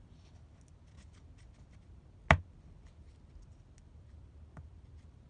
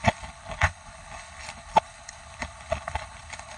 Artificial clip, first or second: second